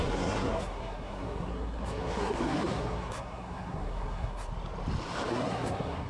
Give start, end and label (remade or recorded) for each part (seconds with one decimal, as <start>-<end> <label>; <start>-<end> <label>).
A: 0.0-4.5 remade; 4.5-5.3 recorded; 5.3-6.1 remade